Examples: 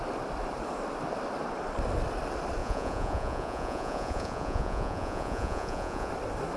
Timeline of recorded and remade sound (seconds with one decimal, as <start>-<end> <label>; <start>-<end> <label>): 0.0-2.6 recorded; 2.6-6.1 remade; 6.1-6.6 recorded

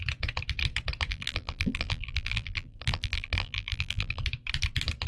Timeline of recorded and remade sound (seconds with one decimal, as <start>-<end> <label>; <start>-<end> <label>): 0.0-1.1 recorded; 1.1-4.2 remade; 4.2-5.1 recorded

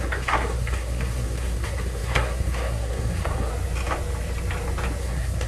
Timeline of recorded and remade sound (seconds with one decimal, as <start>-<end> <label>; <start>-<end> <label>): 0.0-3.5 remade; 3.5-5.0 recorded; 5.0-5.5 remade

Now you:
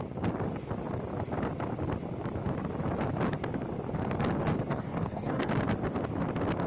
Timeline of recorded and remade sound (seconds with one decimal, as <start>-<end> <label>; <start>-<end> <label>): 0.0-4.7 recorded; 4.7-5.5 remade; 5.5-6.7 recorded

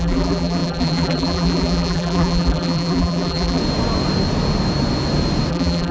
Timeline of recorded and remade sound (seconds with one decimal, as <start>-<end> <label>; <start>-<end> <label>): 0.0-3.6 remade; 3.6-5.5 recorded; 5.5-5.9 remade